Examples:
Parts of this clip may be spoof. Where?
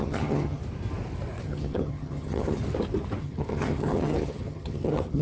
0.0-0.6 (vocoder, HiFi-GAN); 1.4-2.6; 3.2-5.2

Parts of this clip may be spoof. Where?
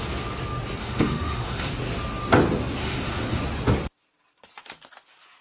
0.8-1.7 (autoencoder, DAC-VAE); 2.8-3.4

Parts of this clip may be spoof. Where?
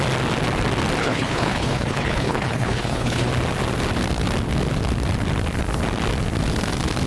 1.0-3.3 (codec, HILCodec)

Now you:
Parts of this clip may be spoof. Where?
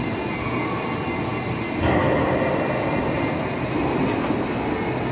none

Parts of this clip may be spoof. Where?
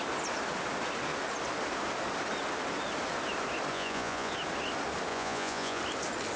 3.7-4.3 (vocoder, Vocos); 5.1-5.8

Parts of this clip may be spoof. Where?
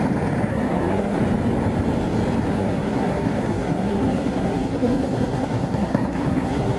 0.5-1.2 (codec, SNAC); 2.5-6.8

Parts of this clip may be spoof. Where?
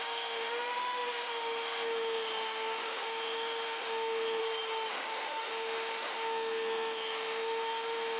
0.0-4.4 (autoencoder, DAC-VAE); 4.9-8.2